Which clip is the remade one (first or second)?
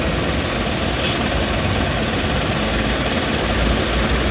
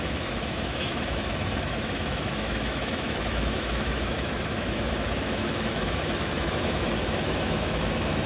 second